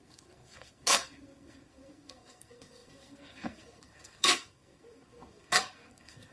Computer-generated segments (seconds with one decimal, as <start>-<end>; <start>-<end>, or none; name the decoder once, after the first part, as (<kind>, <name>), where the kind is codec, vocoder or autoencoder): 0.0-6.3 (codec, SNAC)